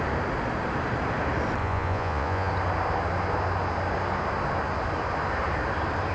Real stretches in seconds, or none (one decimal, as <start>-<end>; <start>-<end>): 0.0-1.6; 2.5-6.1